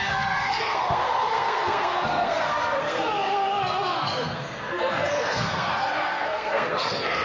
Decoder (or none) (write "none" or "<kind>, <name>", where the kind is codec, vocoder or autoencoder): codec, SNAC